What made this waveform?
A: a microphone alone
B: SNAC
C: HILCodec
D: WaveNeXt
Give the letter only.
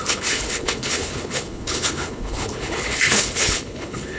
C